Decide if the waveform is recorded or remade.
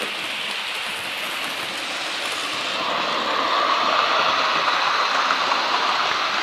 recorded